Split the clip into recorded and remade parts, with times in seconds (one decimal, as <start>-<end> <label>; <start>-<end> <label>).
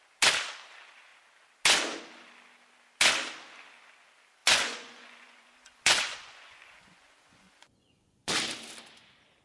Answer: 0.0-4.4 recorded; 4.4-8.3 remade; 8.3-9.4 recorded